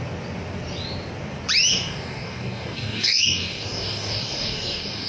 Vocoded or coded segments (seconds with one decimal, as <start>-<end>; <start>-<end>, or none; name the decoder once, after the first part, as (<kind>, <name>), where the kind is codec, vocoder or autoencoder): 1.7-5.1 (codec, DAC)